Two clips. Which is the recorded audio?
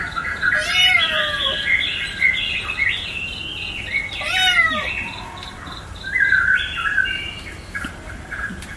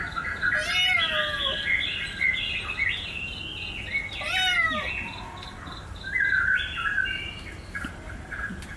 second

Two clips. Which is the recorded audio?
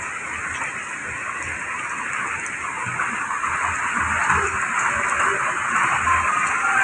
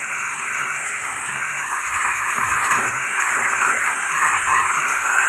first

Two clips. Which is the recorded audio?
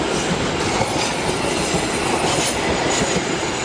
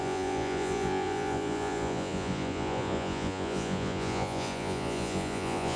first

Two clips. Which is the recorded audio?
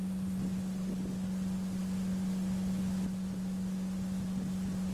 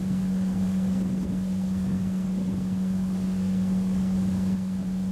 first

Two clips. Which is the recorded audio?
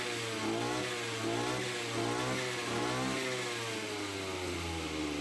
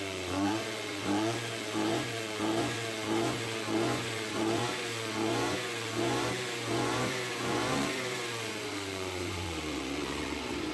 first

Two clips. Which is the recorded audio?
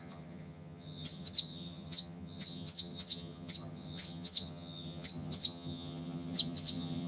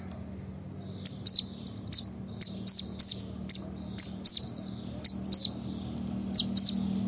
second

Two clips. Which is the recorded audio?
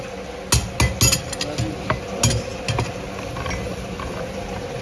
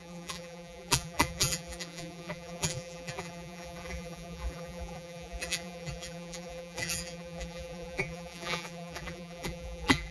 first